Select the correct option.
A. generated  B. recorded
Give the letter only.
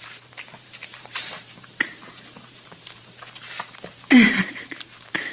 A